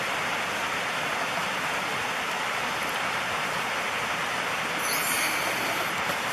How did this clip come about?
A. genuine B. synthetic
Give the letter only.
A